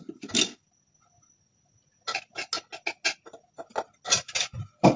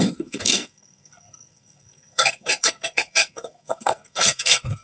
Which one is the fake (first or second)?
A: second